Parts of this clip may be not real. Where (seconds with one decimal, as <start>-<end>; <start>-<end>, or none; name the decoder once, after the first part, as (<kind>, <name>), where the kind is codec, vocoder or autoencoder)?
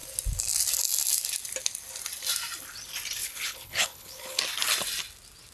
3.2-4.4 (codec, HILCodec)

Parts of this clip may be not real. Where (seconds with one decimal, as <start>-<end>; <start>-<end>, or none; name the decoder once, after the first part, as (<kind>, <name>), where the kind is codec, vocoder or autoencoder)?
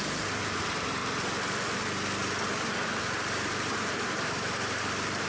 0.0-1.0 (vocoder, BigVGAN v2); 3.0-5.3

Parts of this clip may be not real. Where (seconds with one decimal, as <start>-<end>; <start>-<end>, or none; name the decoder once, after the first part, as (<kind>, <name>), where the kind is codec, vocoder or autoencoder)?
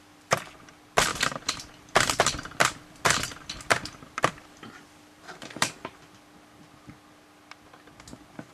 1.1-6.1 (vocoder, BigVGAN v2)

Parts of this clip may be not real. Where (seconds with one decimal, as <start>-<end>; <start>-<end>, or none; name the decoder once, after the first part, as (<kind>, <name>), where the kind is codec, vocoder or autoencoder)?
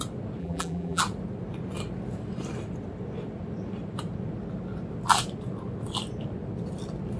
0.4-1.0 (vocoder, BigVGAN v2)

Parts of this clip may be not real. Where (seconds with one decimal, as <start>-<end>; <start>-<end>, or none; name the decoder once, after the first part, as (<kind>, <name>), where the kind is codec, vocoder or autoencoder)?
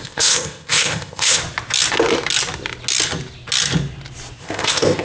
0.0-1.4 (codec, ZipCodec); 4.4-5.0